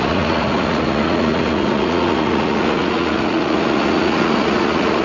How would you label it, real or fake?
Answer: fake